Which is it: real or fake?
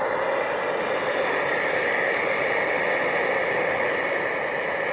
real